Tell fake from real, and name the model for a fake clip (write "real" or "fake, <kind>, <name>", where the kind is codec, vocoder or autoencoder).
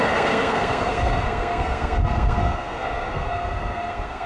fake, codec, SNAC